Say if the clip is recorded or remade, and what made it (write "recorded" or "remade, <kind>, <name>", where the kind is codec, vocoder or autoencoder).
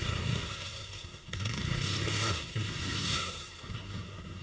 remade, codec, SNAC